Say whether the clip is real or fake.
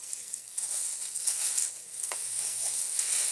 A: fake